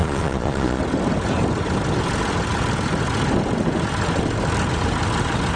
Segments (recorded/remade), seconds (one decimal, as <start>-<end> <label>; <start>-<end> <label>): 0.0-0.8 remade; 0.8-5.6 recorded